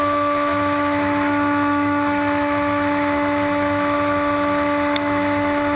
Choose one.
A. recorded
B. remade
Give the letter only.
B